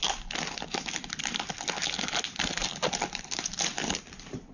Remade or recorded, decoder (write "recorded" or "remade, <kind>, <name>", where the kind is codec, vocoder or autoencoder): recorded